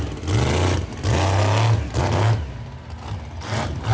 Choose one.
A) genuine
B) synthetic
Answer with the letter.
A